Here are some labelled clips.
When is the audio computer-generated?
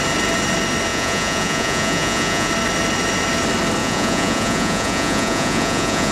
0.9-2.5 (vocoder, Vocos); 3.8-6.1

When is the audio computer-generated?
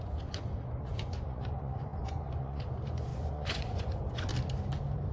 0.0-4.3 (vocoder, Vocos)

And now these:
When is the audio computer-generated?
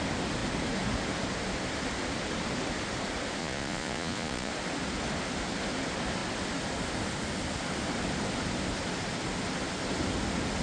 3.4-4.5 (vocoder, Vocos)